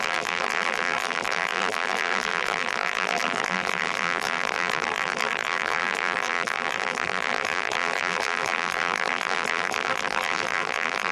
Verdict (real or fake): fake